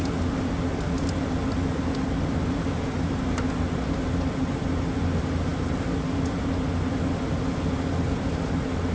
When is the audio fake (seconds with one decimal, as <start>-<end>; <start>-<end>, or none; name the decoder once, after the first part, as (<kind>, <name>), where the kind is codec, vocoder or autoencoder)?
none